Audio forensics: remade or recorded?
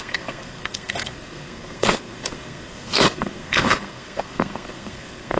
remade